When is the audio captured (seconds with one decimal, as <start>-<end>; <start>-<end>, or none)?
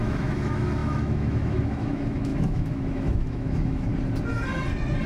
3.9-5.1